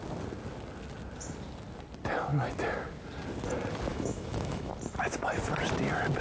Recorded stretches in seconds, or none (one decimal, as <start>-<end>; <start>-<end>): 0.0-3.9; 4.7-6.2